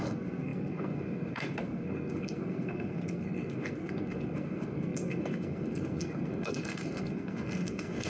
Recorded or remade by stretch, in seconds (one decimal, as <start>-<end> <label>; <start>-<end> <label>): 0.0-8.1 remade